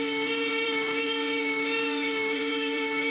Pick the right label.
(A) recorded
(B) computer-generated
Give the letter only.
B